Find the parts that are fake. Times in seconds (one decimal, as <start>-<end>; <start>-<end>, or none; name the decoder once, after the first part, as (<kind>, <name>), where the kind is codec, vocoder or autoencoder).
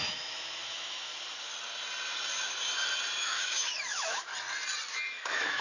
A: 0.0-1.1 (autoencoder, DAC-VAE); 3.2-4.3; 4.9-5.6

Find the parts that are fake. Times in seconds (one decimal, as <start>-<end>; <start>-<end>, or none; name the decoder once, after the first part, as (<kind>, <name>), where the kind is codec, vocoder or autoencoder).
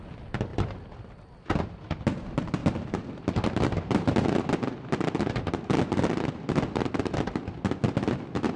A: none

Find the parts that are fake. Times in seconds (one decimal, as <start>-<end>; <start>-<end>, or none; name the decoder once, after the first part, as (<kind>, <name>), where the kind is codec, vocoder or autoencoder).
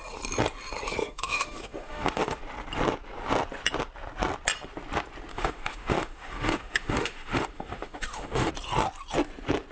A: 1.0-2.4 (autoencoder, DAC-VAE); 5.3-8.5